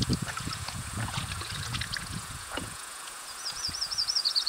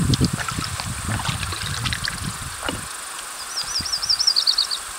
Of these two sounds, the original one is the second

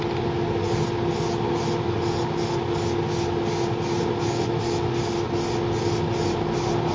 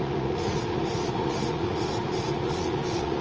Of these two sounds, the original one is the first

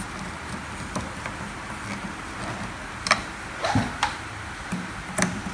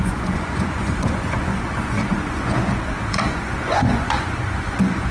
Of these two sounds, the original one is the first